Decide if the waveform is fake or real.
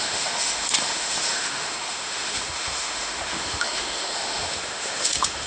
fake